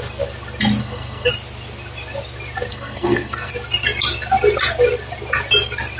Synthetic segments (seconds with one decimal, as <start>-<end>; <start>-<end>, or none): 0.8-1.3; 2.7-3.5